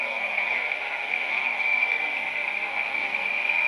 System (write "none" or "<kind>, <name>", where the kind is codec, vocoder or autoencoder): codec, SNAC